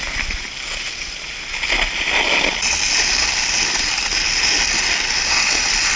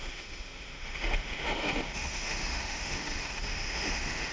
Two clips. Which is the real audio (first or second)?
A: first